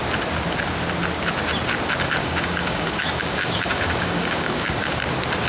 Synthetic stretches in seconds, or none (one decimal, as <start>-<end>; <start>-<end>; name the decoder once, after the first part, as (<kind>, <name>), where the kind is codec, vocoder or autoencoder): 2.2-5.0 (codec, DAC)